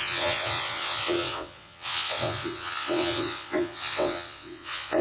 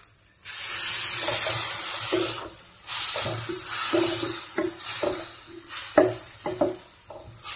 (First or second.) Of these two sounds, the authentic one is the second